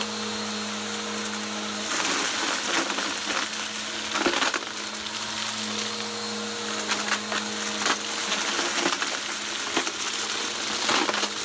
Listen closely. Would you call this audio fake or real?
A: real